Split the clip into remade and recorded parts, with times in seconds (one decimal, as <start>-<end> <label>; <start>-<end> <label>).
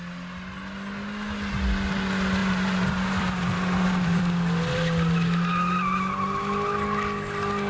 0.0-2.4 recorded; 2.4-4.2 remade; 4.2-7.7 recorded